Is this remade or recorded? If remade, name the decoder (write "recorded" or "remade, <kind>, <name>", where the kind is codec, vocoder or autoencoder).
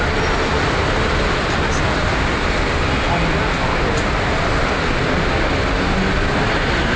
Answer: recorded